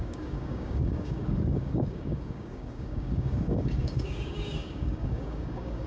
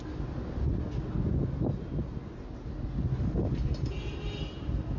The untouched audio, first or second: second